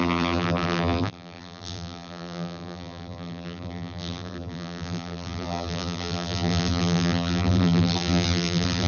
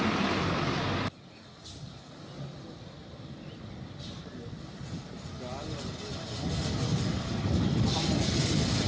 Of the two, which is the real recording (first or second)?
second